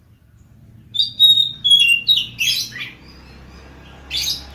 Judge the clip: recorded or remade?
recorded